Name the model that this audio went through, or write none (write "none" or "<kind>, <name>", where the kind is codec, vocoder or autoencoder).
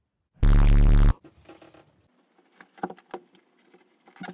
none